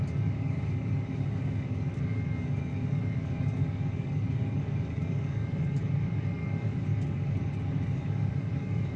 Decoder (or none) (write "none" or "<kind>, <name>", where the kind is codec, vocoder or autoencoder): codec, DAC